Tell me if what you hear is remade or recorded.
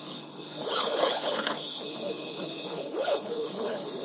remade